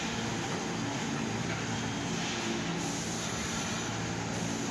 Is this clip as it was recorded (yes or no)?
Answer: yes